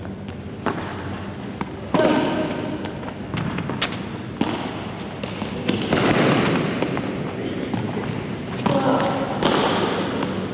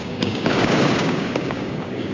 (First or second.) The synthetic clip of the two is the second